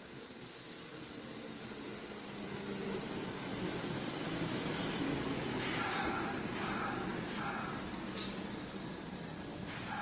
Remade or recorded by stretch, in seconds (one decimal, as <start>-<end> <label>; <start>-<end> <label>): 0.0-10.0 recorded